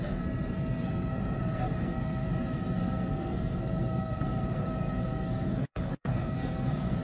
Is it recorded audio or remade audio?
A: remade